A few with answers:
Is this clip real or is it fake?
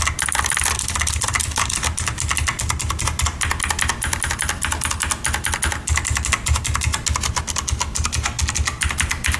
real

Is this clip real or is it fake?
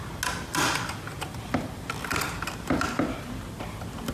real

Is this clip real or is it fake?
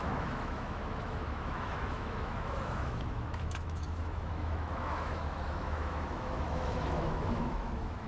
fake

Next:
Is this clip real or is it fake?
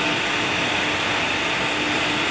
real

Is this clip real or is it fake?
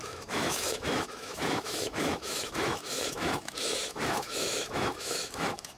fake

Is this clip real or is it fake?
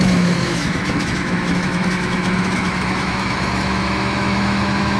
fake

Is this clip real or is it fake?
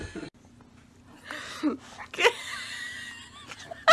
real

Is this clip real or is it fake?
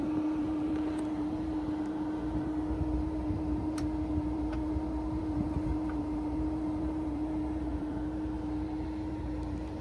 fake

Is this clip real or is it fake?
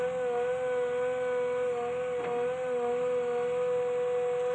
real